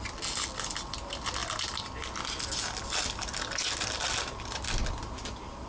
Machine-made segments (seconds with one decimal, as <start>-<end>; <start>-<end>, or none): none